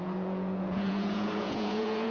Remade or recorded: remade